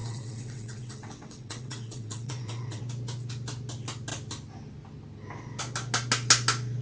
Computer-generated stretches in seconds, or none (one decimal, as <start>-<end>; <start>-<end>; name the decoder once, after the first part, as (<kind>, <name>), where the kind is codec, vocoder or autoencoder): 0.0-2.8 (vocoder, WaveNeXt)